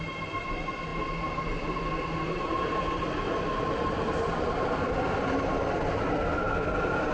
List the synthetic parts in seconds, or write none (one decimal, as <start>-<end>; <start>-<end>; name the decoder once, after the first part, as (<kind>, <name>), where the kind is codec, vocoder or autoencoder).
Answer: none